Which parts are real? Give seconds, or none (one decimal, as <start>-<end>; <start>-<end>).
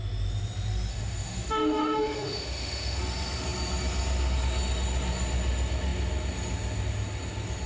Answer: 0.0-0.9; 3.0-7.7